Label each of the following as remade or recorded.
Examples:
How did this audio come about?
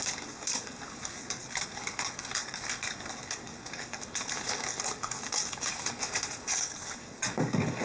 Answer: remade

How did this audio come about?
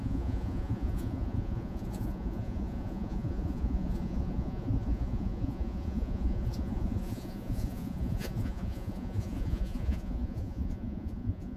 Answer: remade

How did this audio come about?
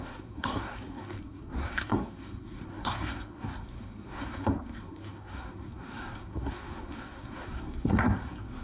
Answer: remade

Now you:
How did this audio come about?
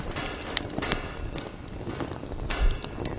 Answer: recorded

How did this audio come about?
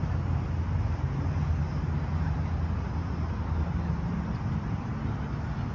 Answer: recorded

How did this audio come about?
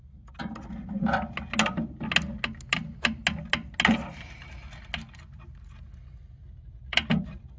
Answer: recorded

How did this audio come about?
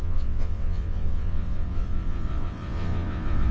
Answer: remade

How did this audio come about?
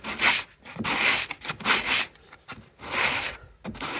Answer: recorded